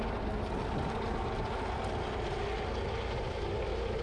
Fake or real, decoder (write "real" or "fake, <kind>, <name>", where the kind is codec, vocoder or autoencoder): real